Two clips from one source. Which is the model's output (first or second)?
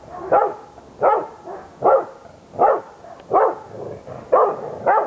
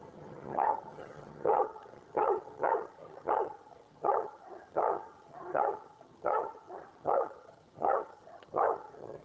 second